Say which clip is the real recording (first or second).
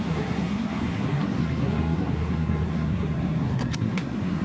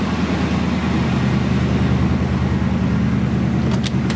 second